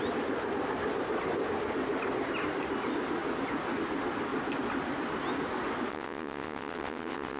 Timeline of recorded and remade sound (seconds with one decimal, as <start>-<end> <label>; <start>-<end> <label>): 0.0-5.9 recorded; 5.9-7.4 remade